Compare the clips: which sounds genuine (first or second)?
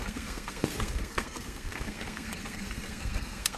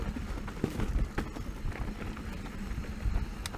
second